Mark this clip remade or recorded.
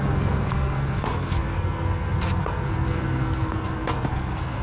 remade